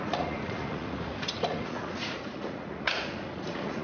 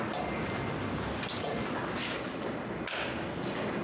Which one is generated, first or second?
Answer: first